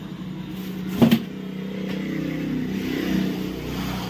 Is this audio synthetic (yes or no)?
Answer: no